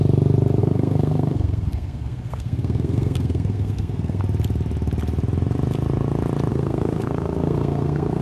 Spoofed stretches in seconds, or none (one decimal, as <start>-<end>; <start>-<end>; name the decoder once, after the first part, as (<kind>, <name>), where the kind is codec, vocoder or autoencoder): 0.6-4.2 (codec, SNAC); 6.5-8.2

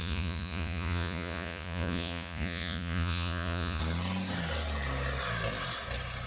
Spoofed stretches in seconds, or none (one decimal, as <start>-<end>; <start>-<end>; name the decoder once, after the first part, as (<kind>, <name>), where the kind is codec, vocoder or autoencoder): 0.0-3.8 (vocoder, Vocos)

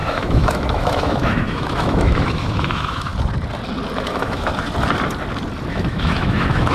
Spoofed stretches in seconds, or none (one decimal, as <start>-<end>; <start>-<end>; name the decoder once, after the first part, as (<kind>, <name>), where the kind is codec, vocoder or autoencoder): 0.0-3.1 (autoencoder, DAC-VAE); 4.1-4.5; 5.7-6.7

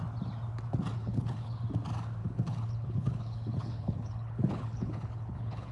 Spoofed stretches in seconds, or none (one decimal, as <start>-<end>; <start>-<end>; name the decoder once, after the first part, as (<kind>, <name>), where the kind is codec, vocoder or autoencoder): 1.0-1.6 (codec, HILCodec); 2.2-5.7

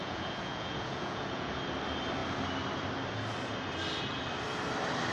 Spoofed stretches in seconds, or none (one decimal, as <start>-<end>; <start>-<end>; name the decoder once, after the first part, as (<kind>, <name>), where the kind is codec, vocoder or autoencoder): 0.0-1.6 (vocoder, Vocos)

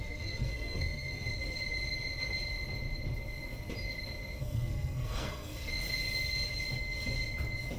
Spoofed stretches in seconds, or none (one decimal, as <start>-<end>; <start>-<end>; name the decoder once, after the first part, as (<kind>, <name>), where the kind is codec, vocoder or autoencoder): 0.0-1.3 (codec, SNAC); 4.4-5.7